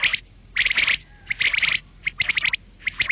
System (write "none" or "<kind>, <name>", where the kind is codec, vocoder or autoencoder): none